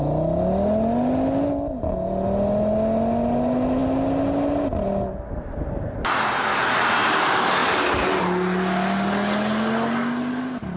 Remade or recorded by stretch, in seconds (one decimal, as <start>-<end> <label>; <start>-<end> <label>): 0.0-10.8 recorded